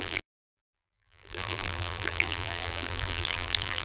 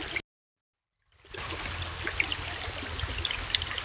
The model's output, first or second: first